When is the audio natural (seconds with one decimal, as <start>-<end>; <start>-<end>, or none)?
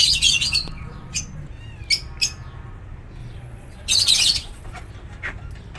1.2-3.2; 4.9-5.8